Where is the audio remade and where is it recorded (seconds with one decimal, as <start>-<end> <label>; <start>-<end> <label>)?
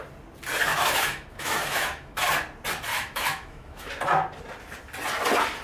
0.0-0.7 recorded; 0.7-2.3 remade; 2.3-2.9 recorded; 2.9-3.9 remade; 3.9-5.6 recorded